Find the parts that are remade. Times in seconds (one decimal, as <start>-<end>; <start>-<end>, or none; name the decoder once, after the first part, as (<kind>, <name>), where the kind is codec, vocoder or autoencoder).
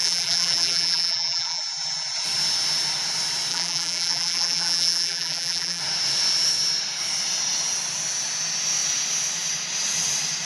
0.0-1.6 (vocoder, BigVGAN v2); 3.5-5.8